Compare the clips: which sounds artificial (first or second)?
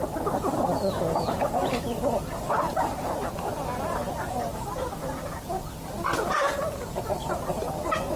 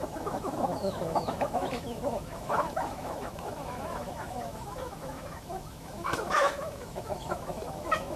second